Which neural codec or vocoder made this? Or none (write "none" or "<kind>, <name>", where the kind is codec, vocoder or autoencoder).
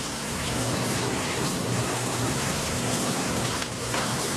codec, SNAC